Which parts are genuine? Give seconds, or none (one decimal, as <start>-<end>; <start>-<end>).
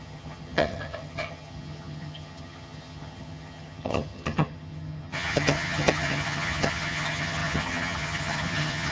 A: none